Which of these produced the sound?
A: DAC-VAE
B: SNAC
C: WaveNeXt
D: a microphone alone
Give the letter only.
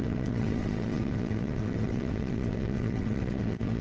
C